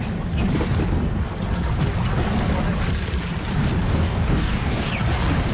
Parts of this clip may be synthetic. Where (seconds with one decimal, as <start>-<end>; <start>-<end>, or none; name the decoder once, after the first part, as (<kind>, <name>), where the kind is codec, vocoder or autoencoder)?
3.9-4.9 (codec, DAC)